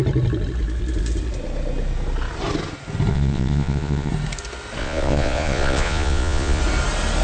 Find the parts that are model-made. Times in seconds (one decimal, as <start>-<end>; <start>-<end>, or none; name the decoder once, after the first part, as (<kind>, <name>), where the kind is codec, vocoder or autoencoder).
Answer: 3.1-4.1 (vocoder, Vocos); 4.8-6.6